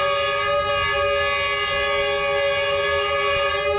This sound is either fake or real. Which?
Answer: real